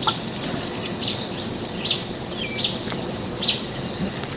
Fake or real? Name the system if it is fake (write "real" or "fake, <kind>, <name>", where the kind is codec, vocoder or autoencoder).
real